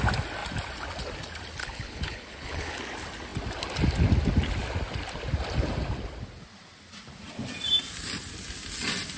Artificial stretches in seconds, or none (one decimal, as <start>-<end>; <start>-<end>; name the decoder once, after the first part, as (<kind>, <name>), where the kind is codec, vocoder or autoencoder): 1.6-2.8 (codec, HILCodec)